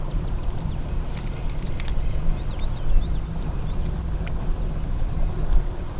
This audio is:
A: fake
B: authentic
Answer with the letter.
B